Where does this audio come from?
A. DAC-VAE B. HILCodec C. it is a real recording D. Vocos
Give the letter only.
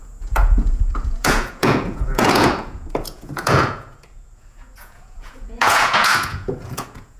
D